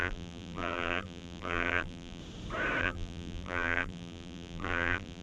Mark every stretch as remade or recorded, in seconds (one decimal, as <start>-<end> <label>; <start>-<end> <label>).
0.0-2.2 remade; 2.2-2.8 recorded; 2.8-5.2 remade